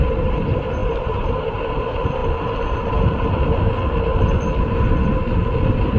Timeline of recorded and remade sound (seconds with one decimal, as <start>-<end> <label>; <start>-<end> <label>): 0.0-2.2 remade; 2.2-6.0 recorded